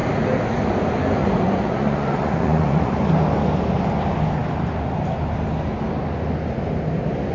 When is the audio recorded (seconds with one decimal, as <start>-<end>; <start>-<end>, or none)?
0.0-1.2; 2.9-7.3